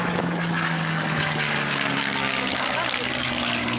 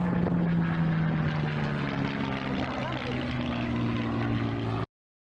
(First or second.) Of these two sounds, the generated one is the first